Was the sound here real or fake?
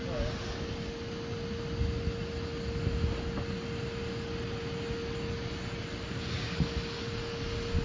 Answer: real